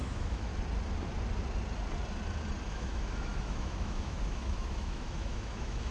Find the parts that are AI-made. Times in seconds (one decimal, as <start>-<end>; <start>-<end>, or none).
0.0-0.5; 2.7-5.9